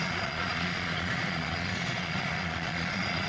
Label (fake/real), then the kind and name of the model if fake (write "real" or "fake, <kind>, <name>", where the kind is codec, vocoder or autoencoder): fake, vocoder, Vocos